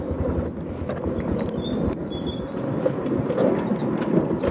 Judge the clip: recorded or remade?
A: recorded